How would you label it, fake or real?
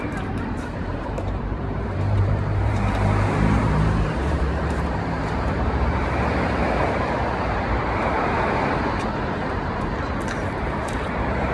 fake